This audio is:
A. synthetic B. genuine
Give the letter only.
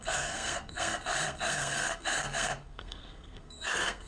A